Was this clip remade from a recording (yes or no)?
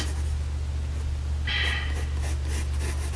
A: no